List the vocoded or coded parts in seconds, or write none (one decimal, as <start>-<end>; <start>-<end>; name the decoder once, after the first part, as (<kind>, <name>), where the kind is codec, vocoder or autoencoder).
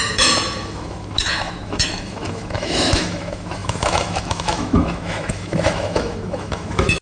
0.0-7.0 (autoencoder, DAC-VAE)